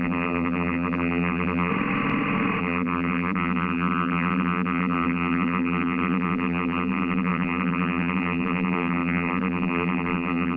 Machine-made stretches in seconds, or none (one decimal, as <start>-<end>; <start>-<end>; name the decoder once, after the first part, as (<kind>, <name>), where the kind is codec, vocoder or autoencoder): 0.0-1.7 (vocoder, BigVGAN v2); 2.6-10.6

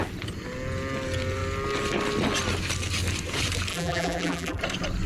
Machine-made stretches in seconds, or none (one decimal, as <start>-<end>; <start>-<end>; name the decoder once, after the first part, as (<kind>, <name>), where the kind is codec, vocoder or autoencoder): 3.7-4.6 (vocoder, BigVGAN v2)